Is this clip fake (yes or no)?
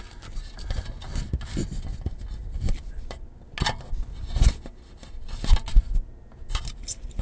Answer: no